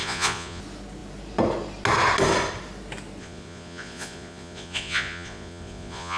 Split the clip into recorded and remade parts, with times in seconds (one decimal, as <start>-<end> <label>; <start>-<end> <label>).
0.0-0.6 remade; 0.6-3.2 recorded; 3.2-6.2 remade